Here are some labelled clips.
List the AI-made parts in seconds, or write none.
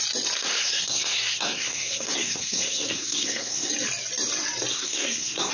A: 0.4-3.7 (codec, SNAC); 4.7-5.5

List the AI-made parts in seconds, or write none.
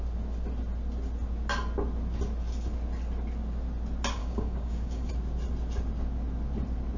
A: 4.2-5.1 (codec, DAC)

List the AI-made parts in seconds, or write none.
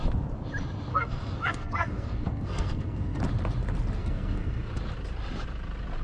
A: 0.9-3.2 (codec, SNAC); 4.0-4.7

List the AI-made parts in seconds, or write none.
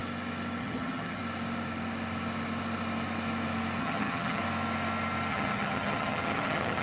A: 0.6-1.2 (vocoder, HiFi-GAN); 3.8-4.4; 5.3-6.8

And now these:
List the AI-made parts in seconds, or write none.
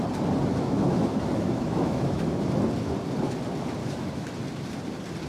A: 0.5-2.6 (autoencoder, DAC-VAE); 3.8-4.3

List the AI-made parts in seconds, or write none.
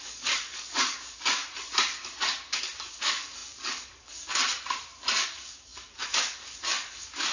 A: 0.0-1.4 (codec, DAC); 2.5-4.4; 5.2-7.3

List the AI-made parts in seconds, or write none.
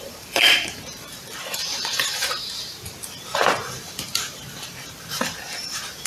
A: 0.0-6.1 (vocoder, BigVGAN v2)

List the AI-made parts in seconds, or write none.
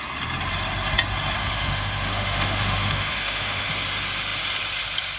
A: 1.4-3.7 (autoencoder, DAC-VAE)